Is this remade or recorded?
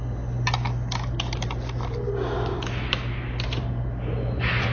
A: recorded